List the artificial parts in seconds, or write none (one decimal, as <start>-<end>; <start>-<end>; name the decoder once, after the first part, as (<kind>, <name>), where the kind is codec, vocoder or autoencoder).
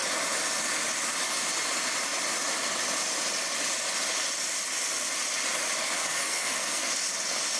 5.8-6.9 (codec, SNAC)